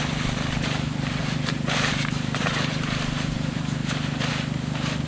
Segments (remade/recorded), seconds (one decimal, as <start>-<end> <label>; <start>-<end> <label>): 0.0-1.2 recorded; 1.2-4.3 remade; 4.3-5.1 recorded